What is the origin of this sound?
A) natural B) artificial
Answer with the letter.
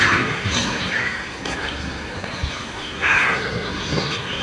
B